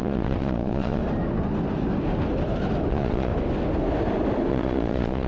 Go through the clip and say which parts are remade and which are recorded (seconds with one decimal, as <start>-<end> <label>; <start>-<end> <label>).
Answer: 0.0-1.0 remade; 1.0-2.9 recorded; 2.9-3.3 remade; 3.3-4.5 recorded; 4.5-5.3 remade